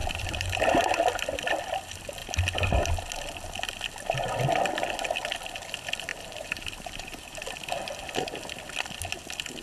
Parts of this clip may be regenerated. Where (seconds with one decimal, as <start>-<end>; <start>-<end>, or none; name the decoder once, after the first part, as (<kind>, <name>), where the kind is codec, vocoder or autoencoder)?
0.0-0.8 (vocoder, BigVGAN v2); 6.1-7.4